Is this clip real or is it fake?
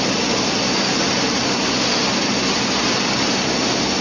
real